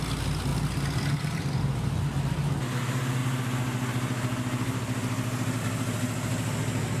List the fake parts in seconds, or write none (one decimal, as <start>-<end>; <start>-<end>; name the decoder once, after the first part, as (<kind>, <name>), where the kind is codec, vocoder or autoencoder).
none